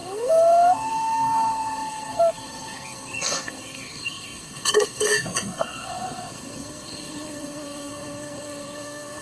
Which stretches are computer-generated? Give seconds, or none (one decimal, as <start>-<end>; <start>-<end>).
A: 0.0-9.2